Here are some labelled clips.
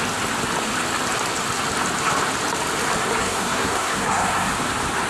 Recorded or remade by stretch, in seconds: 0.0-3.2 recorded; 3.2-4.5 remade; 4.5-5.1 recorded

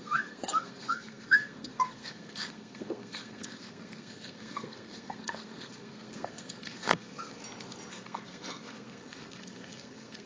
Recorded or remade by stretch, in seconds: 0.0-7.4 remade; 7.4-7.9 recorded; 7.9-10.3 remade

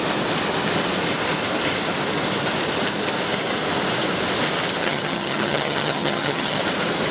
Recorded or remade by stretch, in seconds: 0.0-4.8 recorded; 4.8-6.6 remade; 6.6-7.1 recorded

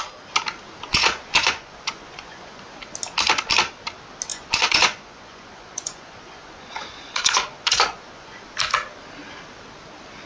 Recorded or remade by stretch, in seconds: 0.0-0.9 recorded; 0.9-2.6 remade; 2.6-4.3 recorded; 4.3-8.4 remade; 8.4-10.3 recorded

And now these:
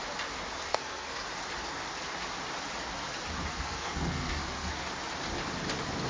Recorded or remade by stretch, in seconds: 0.0-0.7 recorded; 0.7-1.2 remade; 1.2-3.5 recorded; 3.5-4.7 remade; 4.7-6.1 recorded

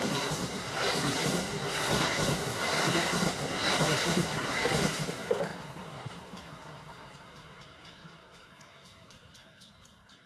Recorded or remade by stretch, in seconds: 0.0-10.3 remade

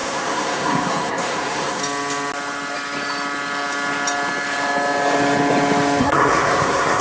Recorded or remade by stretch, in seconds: 0.0-1.8 remade; 1.8-6.0 recorded; 6.0-7.0 remade